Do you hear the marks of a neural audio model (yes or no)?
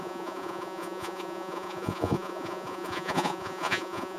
yes